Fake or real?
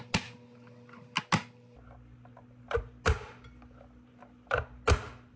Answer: real